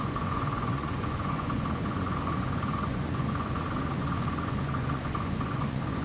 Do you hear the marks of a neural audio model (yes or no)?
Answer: yes